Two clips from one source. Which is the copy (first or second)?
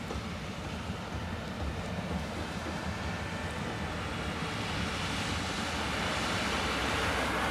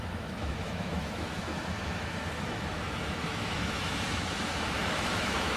second